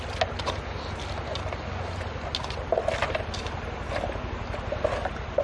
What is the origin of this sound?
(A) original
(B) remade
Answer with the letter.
A